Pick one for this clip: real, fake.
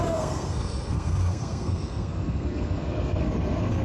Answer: fake